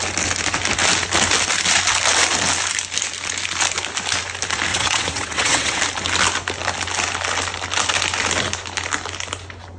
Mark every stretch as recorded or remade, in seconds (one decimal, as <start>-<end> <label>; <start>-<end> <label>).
0.0-4.7 recorded; 4.7-5.8 remade; 5.8-9.8 recorded